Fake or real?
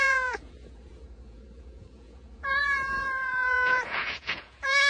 fake